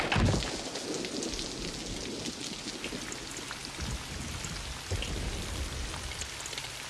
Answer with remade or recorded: recorded